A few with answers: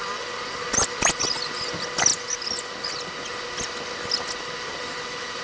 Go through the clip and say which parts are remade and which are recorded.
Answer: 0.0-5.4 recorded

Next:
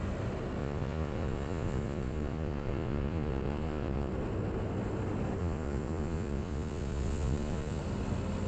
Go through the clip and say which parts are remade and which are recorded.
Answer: 0.0-0.6 recorded; 0.6-4.1 remade; 4.1-5.4 recorded; 5.4-7.8 remade; 7.8-8.5 recorded

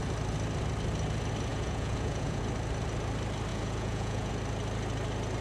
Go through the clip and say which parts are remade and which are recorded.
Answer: 0.0-1.5 recorded; 1.5-2.4 remade; 2.4-3.5 recorded; 3.5-4.3 remade; 4.3-5.4 recorded

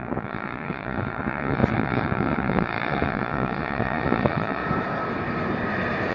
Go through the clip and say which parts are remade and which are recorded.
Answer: 0.0-4.6 remade; 4.6-6.1 recorded

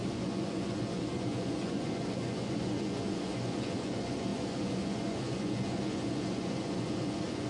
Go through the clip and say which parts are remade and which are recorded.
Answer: 0.0-7.5 remade